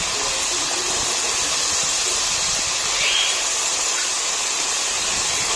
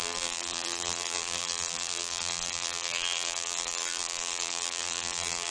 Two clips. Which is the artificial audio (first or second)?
second